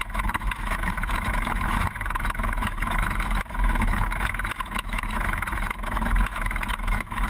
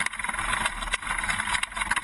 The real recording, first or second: second